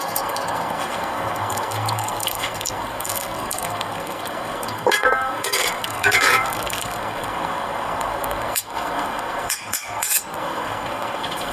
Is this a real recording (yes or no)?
no